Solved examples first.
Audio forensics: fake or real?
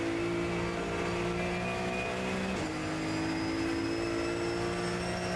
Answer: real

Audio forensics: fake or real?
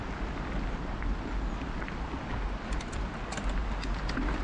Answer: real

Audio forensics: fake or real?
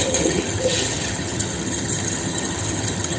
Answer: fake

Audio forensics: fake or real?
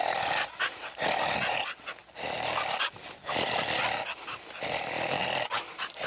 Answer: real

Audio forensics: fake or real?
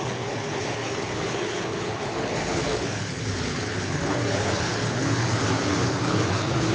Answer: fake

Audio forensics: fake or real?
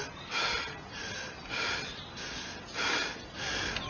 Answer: real